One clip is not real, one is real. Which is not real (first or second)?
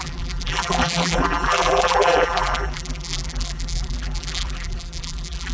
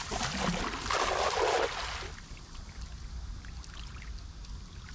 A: first